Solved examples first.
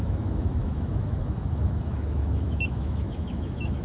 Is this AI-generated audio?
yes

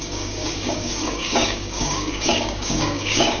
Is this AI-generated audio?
yes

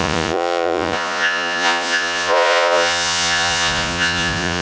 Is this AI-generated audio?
yes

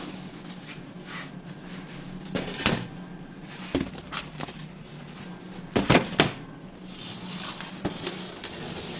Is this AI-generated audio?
no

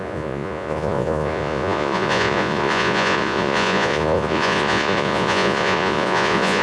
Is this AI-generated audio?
yes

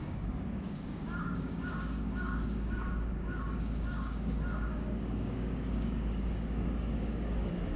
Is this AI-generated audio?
yes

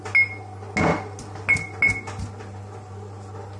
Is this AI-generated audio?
no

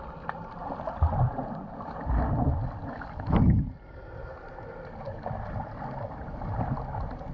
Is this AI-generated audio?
no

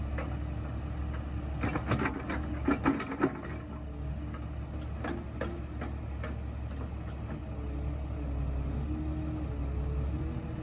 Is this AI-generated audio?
no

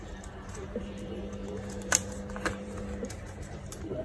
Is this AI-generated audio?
yes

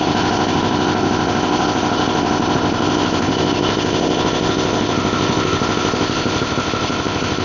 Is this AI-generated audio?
yes